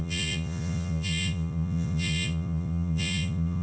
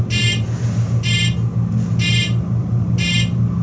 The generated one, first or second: first